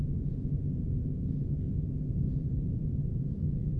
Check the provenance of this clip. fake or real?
fake